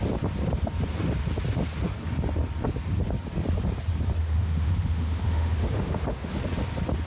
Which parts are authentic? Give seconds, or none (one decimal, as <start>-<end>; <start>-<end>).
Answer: 0.0-4.2; 6.4-7.1